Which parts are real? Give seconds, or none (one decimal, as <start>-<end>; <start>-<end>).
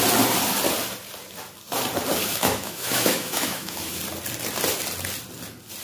0.0-2.3; 4.0-5.8